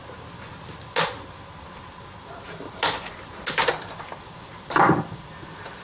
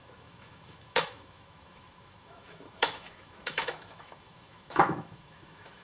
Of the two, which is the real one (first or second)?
first